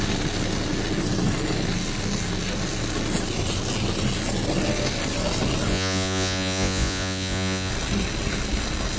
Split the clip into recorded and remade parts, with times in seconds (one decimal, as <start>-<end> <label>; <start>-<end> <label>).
0.0-5.7 recorded; 5.7-7.7 remade; 7.7-9.0 recorded